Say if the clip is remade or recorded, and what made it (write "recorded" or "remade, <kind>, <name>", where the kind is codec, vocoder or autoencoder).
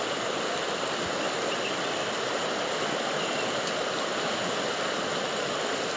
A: recorded